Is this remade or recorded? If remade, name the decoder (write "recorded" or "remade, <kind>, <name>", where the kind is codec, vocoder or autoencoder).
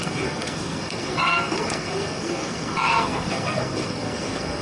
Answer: remade, codec, SNAC